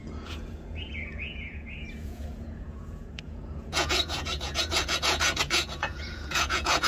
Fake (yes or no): yes